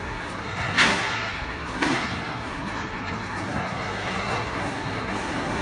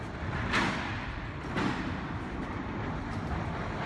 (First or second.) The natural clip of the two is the second